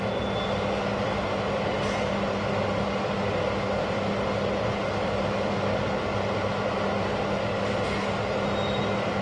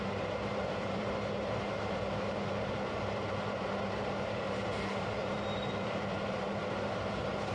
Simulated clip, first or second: second